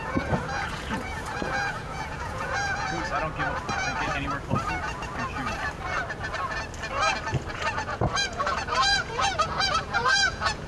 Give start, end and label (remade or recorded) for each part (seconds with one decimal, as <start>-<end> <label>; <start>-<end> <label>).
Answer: 0.0-3.1 remade; 3.1-7.5 recorded; 7.5-10.7 remade